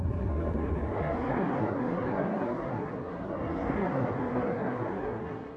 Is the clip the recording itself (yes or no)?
no